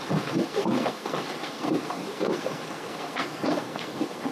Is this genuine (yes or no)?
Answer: no